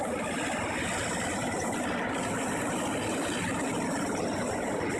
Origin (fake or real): real